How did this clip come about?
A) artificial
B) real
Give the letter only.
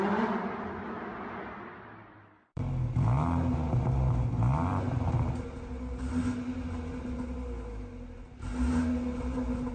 B